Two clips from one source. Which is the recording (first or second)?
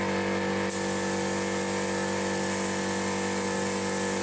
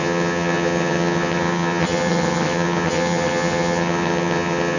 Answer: first